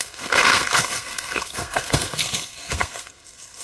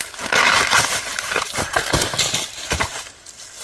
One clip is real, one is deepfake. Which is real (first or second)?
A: second